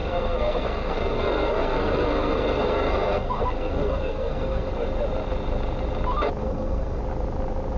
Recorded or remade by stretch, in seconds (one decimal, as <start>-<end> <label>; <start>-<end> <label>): 0.0-4.7 remade; 4.7-6.4 recorded; 6.4-7.0 remade; 7.0-7.8 recorded